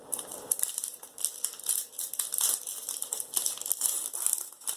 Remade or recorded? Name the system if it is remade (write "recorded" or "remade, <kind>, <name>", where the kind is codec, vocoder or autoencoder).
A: remade, vocoder, BigVGAN v2